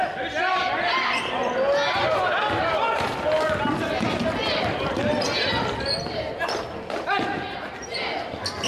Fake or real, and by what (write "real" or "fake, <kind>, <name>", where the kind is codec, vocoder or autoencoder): real